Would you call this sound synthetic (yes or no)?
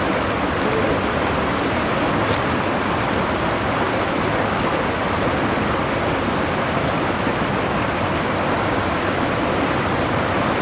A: no